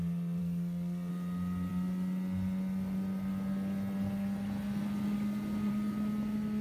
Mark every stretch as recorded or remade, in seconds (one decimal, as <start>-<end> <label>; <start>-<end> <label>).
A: 0.0-0.4 recorded; 0.4-1.1 remade; 1.1-6.6 recorded